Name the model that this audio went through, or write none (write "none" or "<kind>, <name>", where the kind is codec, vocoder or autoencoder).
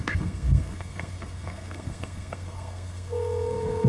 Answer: codec, SNAC